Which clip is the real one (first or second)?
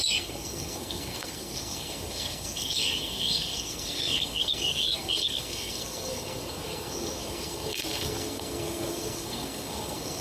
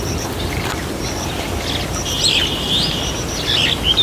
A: second